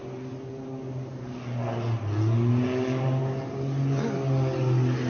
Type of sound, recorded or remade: recorded